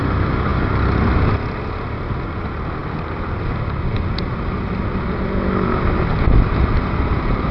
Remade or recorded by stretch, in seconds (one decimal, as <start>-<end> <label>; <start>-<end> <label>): 0.0-7.5 recorded